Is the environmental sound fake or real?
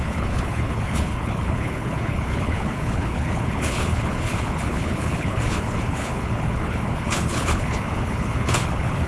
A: fake